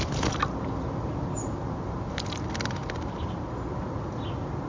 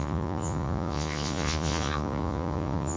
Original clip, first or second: first